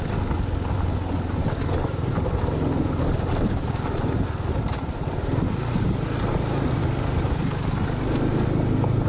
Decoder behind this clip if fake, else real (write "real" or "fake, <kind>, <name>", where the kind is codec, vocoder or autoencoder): real